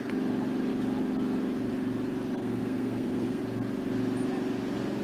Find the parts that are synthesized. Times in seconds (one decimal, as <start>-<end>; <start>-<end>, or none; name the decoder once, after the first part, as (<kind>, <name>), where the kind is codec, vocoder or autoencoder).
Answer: 2.4-3.4 (codec, SNAC)